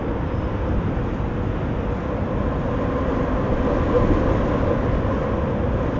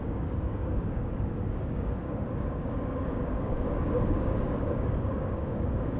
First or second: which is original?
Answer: first